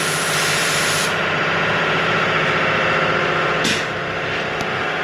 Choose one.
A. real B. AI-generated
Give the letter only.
A